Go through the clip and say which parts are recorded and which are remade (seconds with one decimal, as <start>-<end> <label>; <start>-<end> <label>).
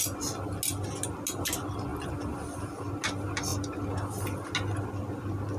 0.0-5.6 recorded